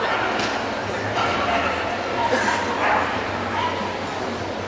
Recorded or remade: recorded